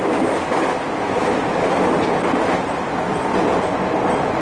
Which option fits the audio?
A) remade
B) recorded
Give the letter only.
B